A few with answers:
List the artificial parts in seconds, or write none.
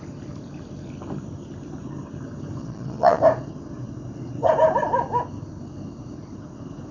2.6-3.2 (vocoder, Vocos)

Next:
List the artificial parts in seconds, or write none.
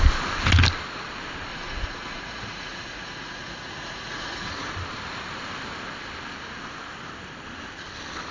1.5-4.5 (vocoder, Vocos)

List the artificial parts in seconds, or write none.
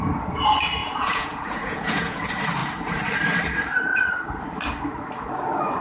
0.8-2.2 (vocoder, Vocos)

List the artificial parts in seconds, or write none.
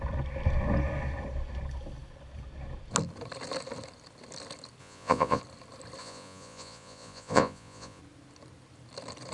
4.8-5.4 (vocoder, Vocos); 6.0-8.0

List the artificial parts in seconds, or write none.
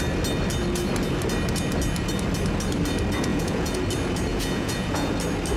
3.3-3.8 (vocoder, Vocos); 4.3-5.1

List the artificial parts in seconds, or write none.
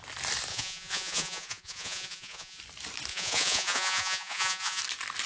0.5-2.6 (vocoder, Vocos); 3.1-4.8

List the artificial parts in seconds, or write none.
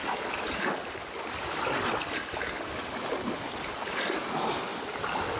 none